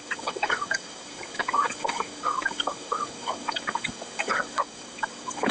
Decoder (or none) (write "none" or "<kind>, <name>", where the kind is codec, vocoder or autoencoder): codec, DAC